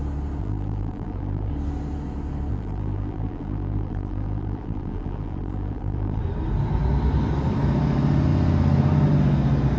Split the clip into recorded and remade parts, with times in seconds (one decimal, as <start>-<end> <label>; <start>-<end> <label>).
0.0-0.4 recorded; 0.4-1.5 remade; 1.5-2.5 recorded; 2.5-6.2 remade; 6.2-9.8 recorded